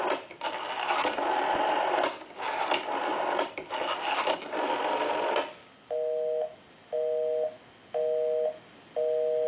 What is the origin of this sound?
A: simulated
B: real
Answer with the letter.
B